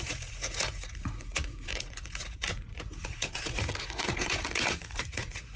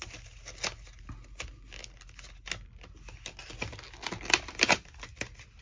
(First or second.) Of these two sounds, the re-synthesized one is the first